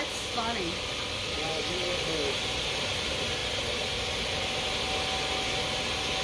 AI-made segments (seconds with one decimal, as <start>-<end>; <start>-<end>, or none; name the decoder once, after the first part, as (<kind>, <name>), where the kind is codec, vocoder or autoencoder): none

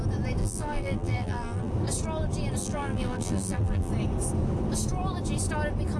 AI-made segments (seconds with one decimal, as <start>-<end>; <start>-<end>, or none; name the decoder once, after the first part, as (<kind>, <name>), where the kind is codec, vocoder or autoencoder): 0.4-1.7 (vocoder, BigVGAN v2); 2.6-3.9